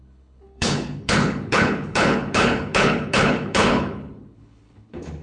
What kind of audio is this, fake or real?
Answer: fake